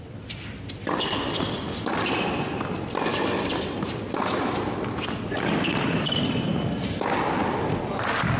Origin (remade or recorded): recorded